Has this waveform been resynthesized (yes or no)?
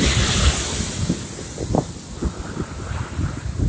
no